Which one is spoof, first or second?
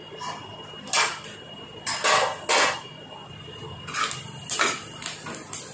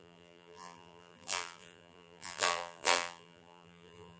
second